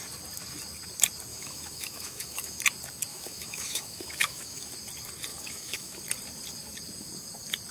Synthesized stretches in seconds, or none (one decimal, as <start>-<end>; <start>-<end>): 1.3-2.6; 3.1-4.7; 5.3-6.0